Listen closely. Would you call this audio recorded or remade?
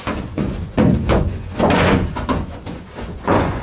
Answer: remade